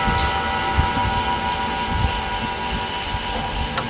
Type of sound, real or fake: real